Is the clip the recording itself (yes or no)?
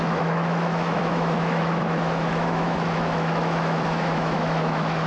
no